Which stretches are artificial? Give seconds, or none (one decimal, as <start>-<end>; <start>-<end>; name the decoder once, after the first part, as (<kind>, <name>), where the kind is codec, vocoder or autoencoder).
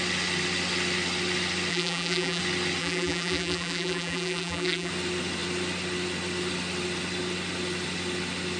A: 1.7-2.4 (vocoder, BigVGAN v2); 2.8-4.9